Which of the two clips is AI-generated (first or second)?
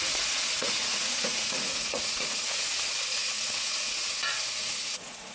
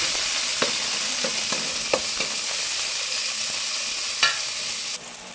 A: first